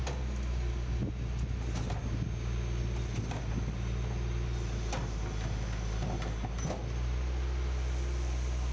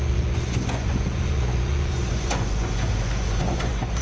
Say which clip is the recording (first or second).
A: first